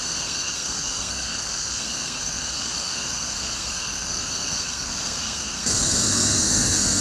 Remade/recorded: remade